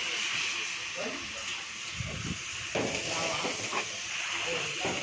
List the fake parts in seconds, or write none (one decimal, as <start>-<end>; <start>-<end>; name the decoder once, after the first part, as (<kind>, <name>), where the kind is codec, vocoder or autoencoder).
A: none